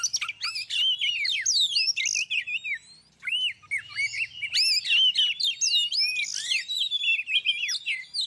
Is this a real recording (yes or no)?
yes